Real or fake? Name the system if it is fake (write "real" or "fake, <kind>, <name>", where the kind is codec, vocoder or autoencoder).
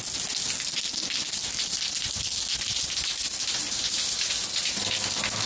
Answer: real